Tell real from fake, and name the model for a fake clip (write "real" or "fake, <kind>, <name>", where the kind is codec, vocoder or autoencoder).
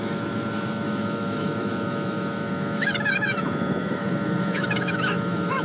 fake, autoencoder, DAC-VAE